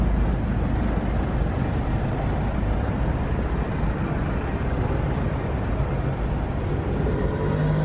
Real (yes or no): yes